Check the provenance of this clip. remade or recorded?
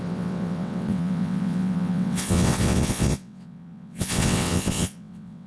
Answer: remade